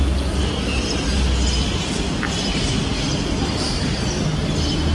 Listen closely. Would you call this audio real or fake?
real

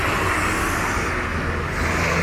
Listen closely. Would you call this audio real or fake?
real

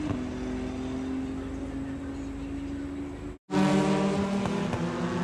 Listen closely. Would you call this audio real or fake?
real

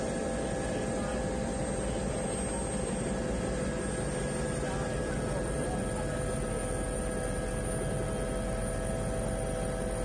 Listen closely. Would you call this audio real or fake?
real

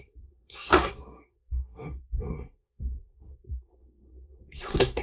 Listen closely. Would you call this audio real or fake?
fake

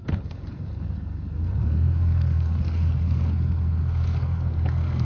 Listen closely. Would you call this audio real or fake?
fake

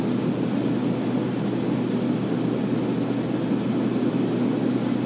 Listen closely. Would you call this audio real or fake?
real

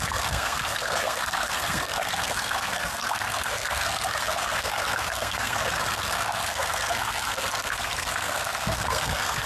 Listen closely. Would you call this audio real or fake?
fake